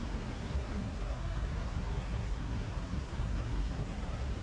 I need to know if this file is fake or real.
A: fake